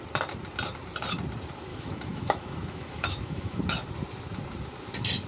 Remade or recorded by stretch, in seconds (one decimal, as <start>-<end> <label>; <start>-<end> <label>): 0.0-1.7 recorded; 1.7-3.6 remade; 3.6-5.3 recorded